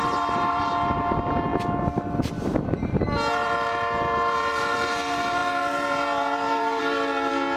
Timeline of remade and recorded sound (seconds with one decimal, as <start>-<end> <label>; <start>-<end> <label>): 0.0-1.5 remade; 1.5-2.4 recorded; 2.4-7.6 remade